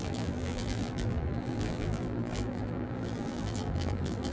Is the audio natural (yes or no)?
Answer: no